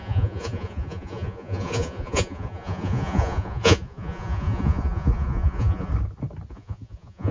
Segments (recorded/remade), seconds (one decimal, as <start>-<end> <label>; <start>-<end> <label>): 0.0-5.9 remade; 5.9-6.5 recorded; 6.5-7.3 remade

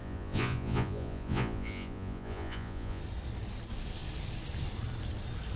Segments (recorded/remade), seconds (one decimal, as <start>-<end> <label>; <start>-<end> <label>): 0.0-3.0 remade; 3.0-5.6 recorded

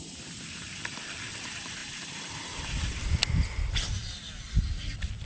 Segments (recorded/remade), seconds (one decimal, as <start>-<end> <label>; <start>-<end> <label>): 0.0-5.3 recorded

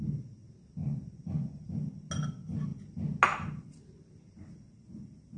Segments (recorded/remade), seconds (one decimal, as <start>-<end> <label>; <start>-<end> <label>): 0.0-0.8 recorded; 0.8-1.6 remade; 1.6-5.4 recorded

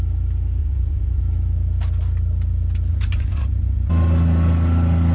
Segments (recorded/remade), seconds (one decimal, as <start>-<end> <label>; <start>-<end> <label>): 0.0-0.6 recorded; 0.6-1.2 remade; 1.2-2.9 recorded; 2.9-3.9 remade; 3.9-5.1 recorded

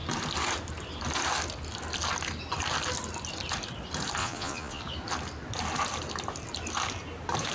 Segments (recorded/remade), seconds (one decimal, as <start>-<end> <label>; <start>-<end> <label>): 0.0-4.2 recorded; 4.2-4.8 remade; 4.8-7.5 recorded

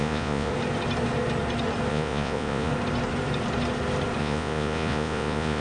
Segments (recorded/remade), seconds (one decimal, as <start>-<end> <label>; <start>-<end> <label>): 0.0-0.5 remade; 0.5-1.9 recorded; 1.9-2.7 remade; 2.7-4.2 recorded; 4.2-5.6 remade

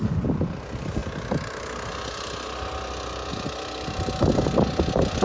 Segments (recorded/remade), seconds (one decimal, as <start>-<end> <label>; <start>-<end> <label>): 0.0-5.2 recorded